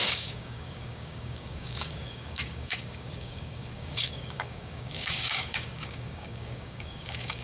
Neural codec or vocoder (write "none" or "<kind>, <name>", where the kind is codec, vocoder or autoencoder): codec, DAC